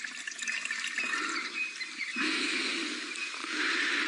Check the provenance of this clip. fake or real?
real